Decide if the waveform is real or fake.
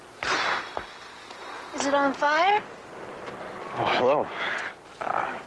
real